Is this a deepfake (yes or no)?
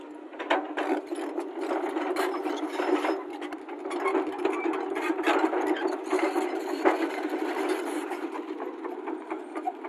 no